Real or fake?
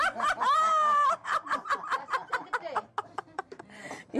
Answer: fake